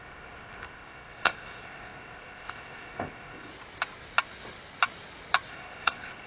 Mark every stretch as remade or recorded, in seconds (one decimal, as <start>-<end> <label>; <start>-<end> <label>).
0.0-3.5 remade; 3.5-5.5 recorded; 5.5-6.3 remade